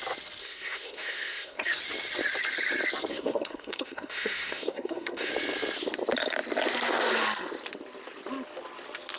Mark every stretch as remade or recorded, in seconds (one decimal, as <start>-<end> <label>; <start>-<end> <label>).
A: 0.0-0.4 recorded; 0.4-1.7 remade; 1.7-3.1 recorded; 3.1-5.3 remade; 5.3-9.2 recorded